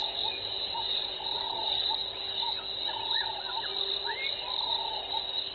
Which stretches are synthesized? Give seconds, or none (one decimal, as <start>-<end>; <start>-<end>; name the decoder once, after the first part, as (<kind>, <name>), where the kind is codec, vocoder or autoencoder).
0.0-1.2 (vocoder, Vocos)